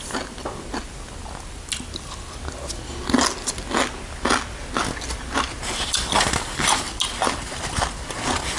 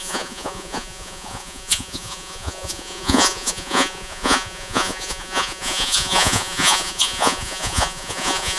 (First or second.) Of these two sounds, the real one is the first